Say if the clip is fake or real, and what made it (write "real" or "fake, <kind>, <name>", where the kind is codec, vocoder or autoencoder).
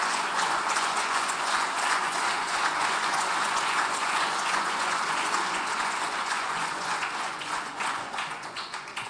fake, vocoder, Vocos